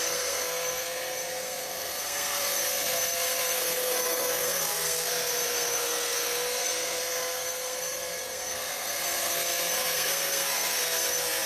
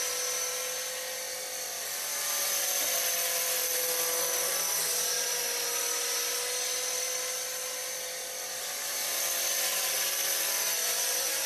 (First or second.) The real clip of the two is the second